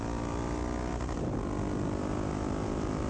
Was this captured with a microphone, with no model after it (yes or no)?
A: yes